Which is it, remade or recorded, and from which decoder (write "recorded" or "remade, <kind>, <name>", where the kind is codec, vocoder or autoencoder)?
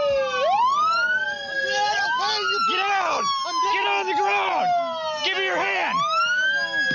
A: recorded